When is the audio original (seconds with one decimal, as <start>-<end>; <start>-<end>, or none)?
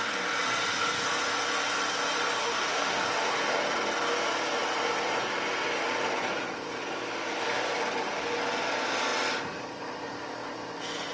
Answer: 0.0-2.4; 3.0-11.1